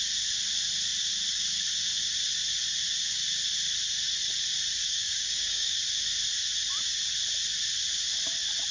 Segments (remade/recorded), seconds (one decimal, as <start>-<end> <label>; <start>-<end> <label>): 0.0-4.8 recorded; 4.8-5.8 remade; 5.8-8.7 recorded